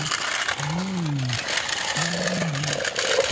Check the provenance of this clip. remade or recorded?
recorded